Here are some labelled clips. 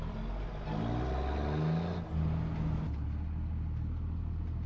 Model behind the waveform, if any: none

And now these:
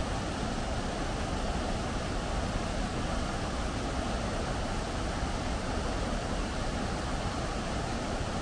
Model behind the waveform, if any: none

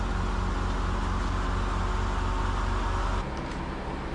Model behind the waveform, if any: none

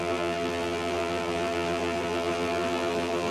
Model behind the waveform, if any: vocoder, BigVGAN v2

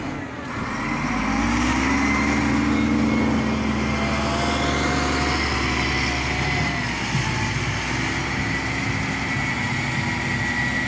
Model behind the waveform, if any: none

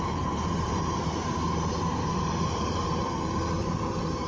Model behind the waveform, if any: vocoder, BigVGAN v2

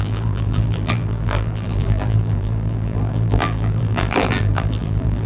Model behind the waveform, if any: vocoder, BigVGAN v2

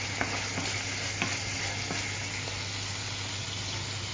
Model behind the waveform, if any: none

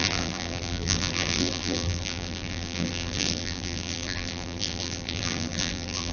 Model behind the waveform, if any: vocoder, BigVGAN v2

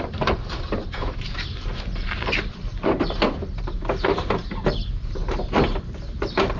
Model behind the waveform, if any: vocoder, BigVGAN v2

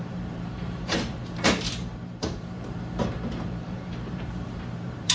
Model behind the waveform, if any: vocoder, BigVGAN v2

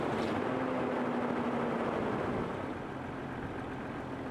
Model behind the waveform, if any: none